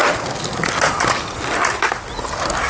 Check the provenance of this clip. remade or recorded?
recorded